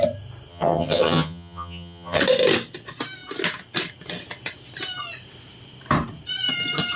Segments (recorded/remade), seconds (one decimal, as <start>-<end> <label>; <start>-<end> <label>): 0.0-0.5 recorded; 0.5-2.2 remade; 2.2-7.0 recorded